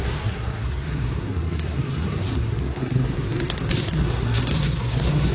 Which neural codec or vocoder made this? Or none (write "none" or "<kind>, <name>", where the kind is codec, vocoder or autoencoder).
codec, SNAC